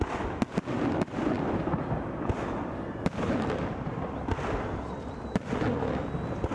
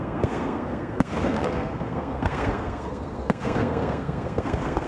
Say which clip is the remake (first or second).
second